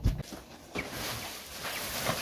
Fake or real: real